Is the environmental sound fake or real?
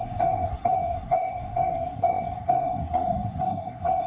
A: fake